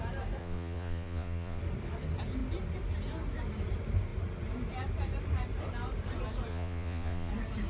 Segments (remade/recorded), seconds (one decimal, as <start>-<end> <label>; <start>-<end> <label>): 0.0-0.4 recorded; 0.4-1.6 remade; 1.6-6.5 recorded; 6.5-7.3 remade; 7.3-7.7 recorded